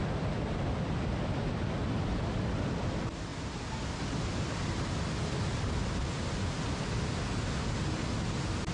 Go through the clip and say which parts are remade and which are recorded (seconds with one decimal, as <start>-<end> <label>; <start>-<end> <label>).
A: 0.0-8.7 recorded